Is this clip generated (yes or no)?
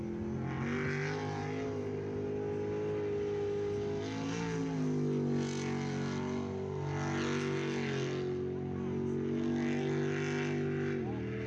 no